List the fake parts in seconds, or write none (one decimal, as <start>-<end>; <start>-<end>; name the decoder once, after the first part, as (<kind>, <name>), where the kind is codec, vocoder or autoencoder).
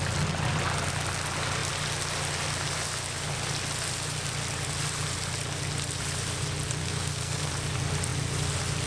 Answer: 6.8-7.5 (codec, SNAC)